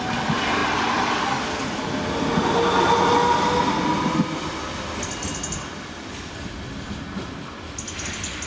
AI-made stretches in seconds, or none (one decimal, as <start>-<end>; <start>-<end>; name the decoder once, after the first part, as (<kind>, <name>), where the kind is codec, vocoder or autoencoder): none